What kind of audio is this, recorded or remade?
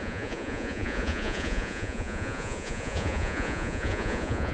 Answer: remade